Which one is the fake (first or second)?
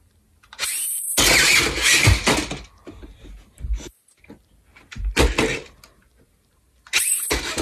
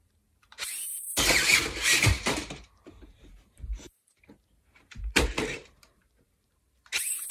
second